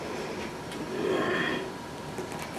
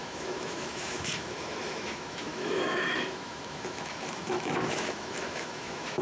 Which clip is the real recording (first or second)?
first